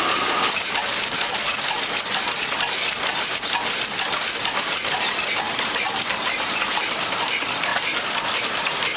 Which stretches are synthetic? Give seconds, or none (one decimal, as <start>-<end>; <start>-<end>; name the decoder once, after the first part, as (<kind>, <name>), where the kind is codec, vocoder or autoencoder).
0.0-1.4 (vocoder, BigVGAN v2); 5.4-7.7; 8.4-9.0